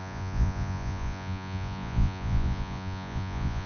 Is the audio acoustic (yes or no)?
no